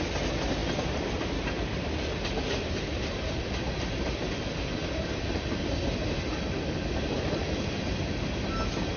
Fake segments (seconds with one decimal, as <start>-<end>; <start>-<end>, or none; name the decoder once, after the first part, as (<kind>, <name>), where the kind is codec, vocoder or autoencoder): 0.6-5.6 (vocoder, BigVGAN v2)